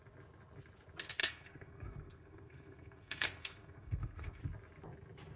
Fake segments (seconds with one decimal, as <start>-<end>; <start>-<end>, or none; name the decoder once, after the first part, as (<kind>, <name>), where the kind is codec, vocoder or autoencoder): 1.2-4.4 (codec, SNAC)